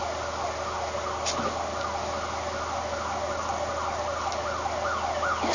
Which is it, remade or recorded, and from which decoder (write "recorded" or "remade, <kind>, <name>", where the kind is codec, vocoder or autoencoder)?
recorded